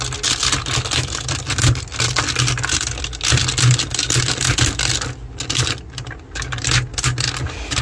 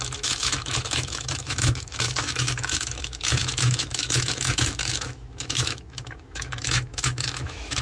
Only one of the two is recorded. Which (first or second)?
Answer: first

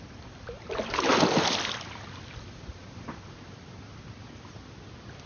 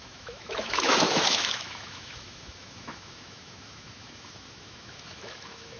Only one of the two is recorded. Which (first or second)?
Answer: first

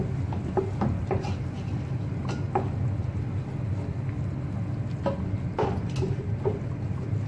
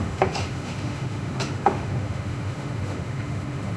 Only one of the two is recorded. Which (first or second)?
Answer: first